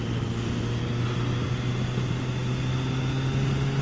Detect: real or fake real